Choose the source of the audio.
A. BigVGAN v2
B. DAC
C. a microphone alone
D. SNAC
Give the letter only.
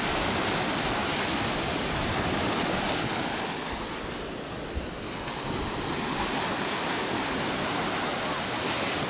C